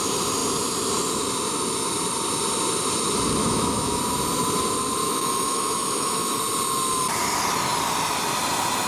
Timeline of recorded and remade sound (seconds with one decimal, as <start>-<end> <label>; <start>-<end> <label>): 0.0-3.4 recorded; 3.4-4.0 remade; 4.0-5.0 recorded; 5.0-6.4 remade; 6.4-8.9 recorded